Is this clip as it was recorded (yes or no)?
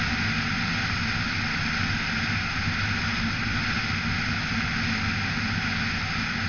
yes